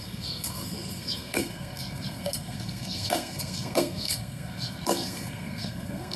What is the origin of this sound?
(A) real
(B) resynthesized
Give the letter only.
B